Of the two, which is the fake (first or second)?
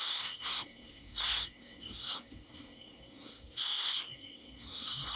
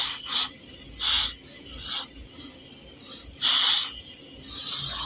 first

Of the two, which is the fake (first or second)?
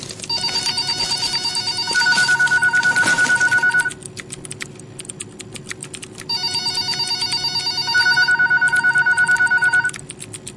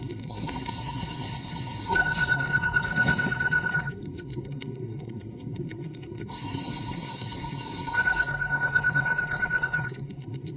second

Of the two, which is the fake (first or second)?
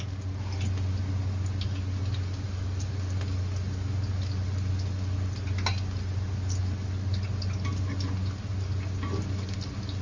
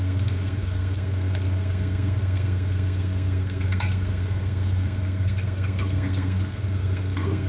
second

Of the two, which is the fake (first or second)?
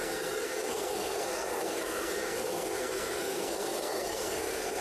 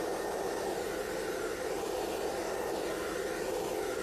first